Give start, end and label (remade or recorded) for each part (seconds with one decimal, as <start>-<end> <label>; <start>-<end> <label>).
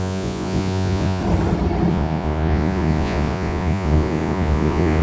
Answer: 0.0-1.2 remade; 1.2-1.9 recorded; 1.9-5.0 remade